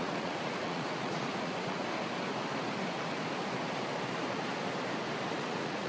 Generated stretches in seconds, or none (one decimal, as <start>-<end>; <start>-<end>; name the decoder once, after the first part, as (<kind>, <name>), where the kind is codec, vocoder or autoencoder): 0.0-1.8 (vocoder, Vocos); 5.3-5.9